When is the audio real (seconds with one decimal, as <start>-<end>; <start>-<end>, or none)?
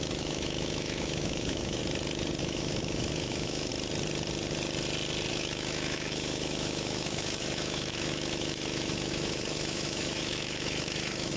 1.8-2.4; 3.7-5.3